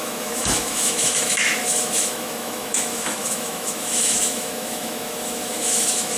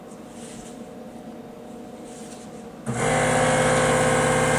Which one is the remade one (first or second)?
first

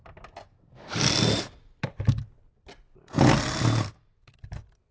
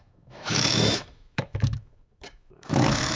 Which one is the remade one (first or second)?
second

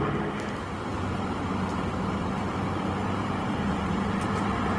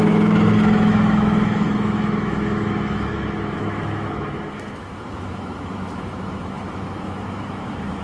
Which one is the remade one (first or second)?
second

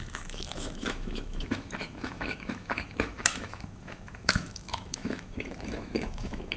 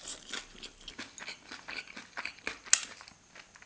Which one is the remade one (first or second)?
first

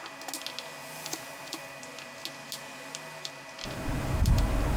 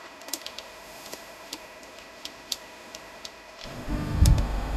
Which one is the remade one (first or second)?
second